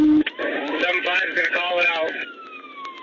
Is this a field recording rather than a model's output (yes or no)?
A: yes